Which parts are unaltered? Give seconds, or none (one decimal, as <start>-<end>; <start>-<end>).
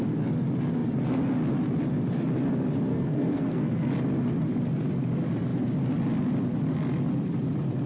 0.0-2.9; 3.9-7.9